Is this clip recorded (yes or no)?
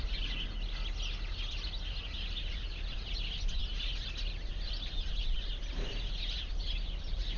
yes